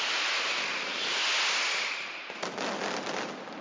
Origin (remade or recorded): recorded